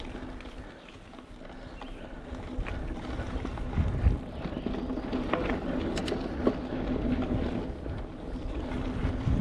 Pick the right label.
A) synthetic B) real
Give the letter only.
B